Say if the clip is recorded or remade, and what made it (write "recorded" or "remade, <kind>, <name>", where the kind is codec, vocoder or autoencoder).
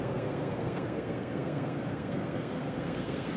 remade, codec, SNAC